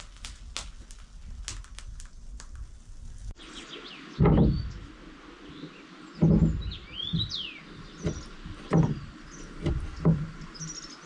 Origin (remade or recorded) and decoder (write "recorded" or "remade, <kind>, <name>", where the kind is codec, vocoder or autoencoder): recorded